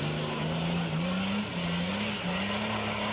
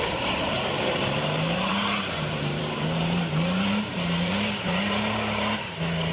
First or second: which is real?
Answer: first